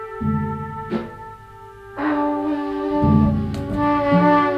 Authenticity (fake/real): real